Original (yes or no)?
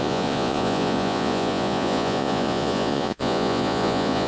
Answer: no